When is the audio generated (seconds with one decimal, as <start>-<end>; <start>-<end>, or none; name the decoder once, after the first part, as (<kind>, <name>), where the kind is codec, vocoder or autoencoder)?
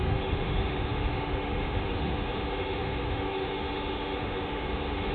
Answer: 0.0-5.1 (autoencoder, DAC-VAE)